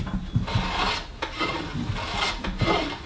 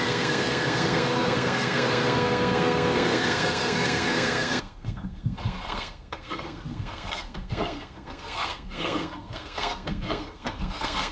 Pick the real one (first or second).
first